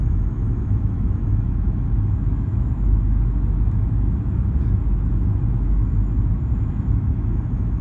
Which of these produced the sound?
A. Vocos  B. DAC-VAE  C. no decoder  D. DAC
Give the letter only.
B